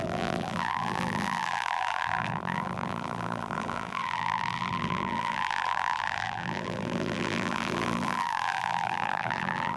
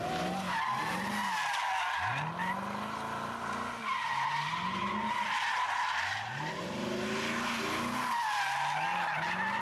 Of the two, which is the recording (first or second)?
second